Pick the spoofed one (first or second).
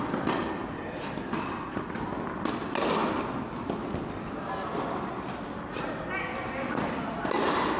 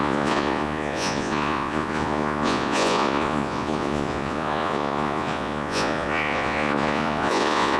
second